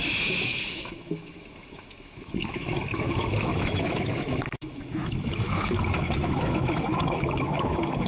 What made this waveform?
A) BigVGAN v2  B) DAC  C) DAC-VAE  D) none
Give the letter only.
C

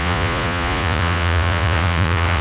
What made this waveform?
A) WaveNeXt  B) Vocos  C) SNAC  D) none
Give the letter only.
B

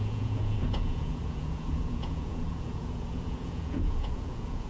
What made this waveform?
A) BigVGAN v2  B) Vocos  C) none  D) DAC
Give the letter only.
B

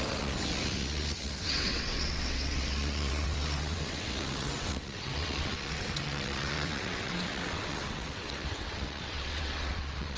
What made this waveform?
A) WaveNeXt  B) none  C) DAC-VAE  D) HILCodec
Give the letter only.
A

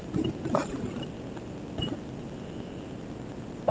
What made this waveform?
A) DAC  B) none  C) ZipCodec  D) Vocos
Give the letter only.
B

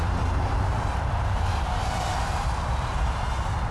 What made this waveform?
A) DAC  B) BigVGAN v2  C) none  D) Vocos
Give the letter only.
B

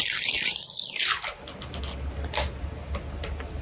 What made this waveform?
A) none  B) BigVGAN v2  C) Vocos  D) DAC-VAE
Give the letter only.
A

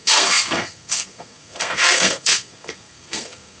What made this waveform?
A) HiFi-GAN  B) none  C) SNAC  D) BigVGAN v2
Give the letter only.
C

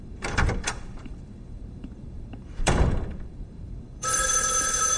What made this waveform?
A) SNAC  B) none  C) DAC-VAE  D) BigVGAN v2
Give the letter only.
D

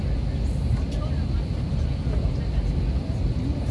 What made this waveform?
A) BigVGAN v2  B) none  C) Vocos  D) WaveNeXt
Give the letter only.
B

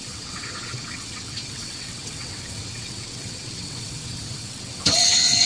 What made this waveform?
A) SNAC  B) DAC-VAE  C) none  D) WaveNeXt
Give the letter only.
D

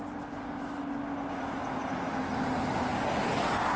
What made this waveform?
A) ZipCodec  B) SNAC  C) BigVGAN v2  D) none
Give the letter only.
D